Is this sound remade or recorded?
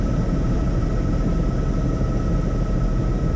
recorded